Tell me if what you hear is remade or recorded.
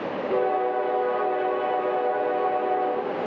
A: recorded